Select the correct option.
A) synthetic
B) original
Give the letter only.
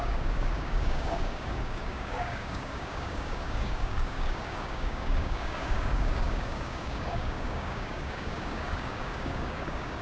A